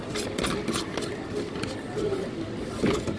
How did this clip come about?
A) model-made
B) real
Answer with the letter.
B